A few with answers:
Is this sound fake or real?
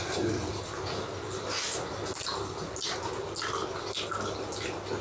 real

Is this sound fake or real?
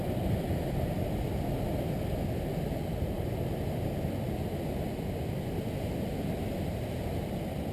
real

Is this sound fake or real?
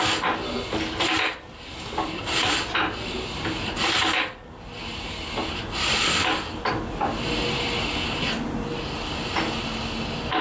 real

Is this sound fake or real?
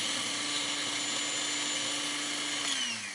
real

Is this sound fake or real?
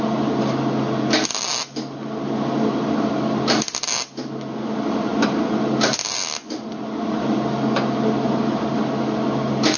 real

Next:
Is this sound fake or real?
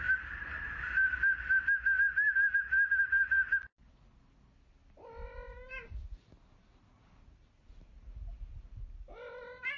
real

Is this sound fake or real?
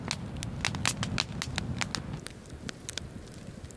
real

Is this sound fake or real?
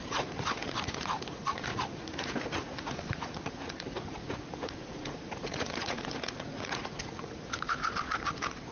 fake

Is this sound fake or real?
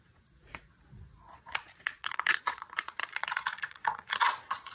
fake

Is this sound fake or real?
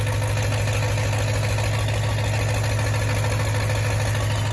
real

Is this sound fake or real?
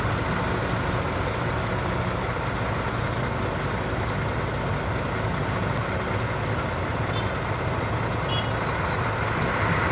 real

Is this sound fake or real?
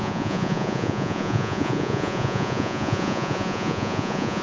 fake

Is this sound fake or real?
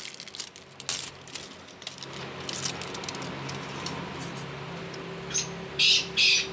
real